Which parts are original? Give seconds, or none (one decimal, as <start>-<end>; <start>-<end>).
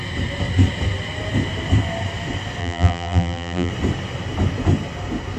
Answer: 0.0-2.6; 3.7-5.4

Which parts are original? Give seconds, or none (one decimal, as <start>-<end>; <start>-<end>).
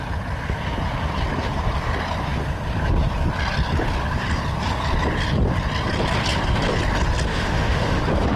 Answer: 0.0-7.3; 8.0-8.4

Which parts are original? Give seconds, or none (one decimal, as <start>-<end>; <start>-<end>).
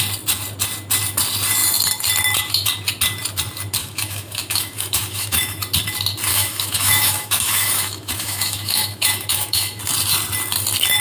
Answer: 0.0-3.8; 5.6-6.3; 9.8-11.0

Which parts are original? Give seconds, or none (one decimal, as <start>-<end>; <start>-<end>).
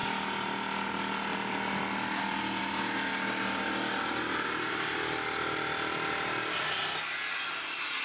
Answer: 0.0-8.0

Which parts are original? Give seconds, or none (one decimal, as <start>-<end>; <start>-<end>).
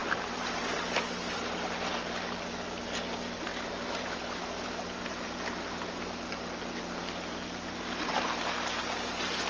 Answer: 0.6-3.5; 5.4-9.5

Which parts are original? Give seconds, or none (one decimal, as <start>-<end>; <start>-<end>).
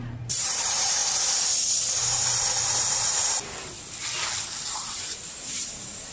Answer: 1.0-4.7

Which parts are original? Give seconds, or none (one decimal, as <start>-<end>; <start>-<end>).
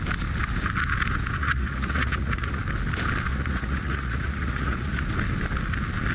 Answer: 0.0-1.4; 2.6-3.3; 5.0-6.1